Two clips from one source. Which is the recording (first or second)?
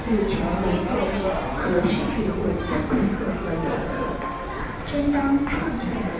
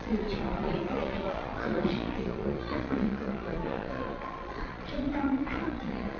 first